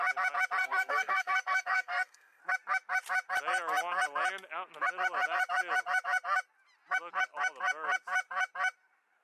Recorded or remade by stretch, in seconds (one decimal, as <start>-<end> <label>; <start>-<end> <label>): 0.0-0.6 recorded; 0.6-2.4 remade; 2.4-9.2 recorded